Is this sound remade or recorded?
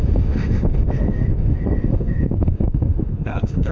remade